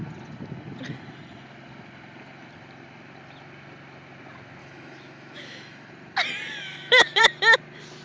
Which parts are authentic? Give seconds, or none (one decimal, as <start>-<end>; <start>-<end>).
0.0-4.6; 5.9-6.6; 7.2-8.0